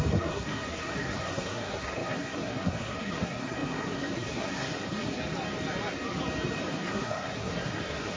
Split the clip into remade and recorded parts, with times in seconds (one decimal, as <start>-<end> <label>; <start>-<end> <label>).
0.0-5.2 remade; 5.2-6.7 recorded; 6.7-8.2 remade